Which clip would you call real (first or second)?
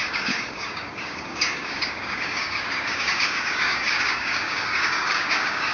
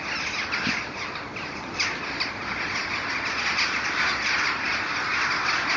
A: second